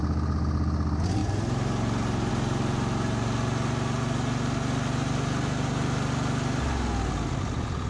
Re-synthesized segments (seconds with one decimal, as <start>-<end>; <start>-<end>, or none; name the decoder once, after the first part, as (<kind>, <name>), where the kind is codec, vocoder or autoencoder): none